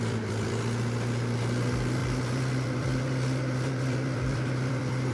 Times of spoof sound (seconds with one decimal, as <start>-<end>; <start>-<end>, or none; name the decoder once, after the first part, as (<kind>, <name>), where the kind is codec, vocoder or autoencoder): 0.0-5.1 (vocoder, BigVGAN v2)

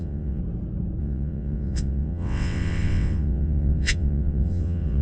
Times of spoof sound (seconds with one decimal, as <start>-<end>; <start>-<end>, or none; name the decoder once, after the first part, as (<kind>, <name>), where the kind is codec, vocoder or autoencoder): 0.0-0.4 (vocoder, WaveNeXt); 1.0-5.0

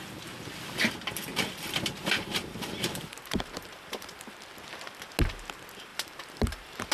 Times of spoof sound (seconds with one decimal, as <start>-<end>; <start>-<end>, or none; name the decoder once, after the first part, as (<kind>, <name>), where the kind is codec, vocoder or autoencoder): 1.3-4.5 (vocoder, BigVGAN v2); 5.9-6.9